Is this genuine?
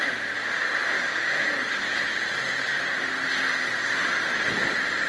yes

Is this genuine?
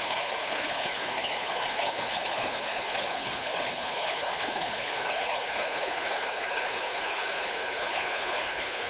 no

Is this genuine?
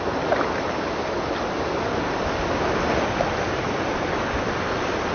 yes